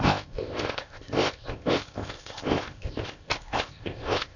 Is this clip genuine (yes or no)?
no